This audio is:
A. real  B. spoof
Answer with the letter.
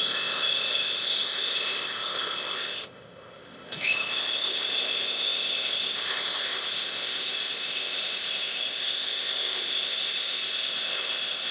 B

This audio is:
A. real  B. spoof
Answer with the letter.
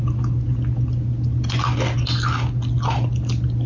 A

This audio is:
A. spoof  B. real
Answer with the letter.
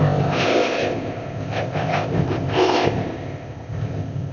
A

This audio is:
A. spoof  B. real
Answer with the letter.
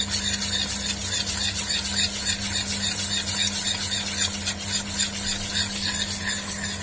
B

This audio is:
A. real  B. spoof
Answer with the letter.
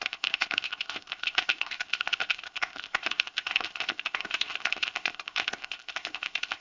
B